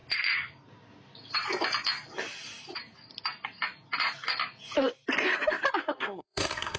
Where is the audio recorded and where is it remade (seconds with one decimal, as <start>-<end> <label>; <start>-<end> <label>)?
0.0-5.8 recorded; 5.8-6.8 remade